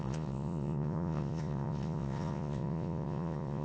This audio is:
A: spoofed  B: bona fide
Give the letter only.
A